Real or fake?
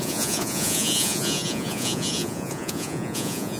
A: fake